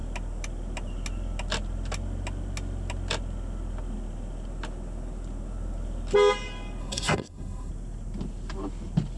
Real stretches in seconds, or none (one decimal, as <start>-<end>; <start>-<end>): 0.0-6.8; 7.7-9.2